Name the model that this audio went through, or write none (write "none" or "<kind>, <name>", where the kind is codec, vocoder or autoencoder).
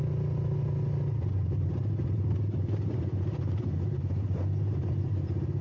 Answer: none